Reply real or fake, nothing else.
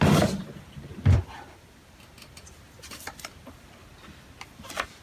real